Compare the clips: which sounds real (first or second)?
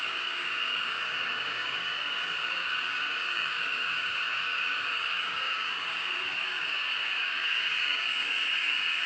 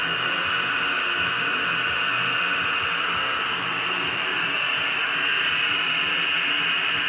second